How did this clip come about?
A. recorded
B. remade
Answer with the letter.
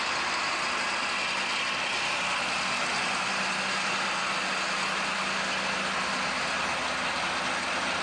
A